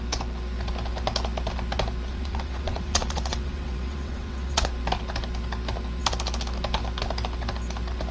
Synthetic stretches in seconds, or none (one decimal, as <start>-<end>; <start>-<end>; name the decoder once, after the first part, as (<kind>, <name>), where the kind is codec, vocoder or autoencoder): 2.1-4.7 (vocoder, WaveNeXt)